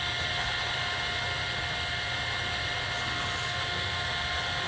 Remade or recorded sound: recorded